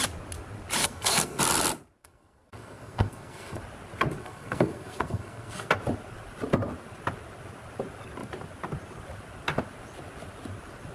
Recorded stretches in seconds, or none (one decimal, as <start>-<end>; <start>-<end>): 0.0-0.8; 1.4-2.0; 3.6-4.2; 5.7-10.9